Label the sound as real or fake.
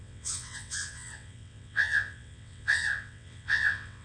fake